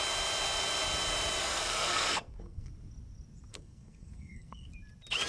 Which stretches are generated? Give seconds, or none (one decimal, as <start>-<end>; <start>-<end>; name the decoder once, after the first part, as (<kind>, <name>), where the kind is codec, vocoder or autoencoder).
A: 1.4-2.7 (codec, SNAC); 3.5-4.7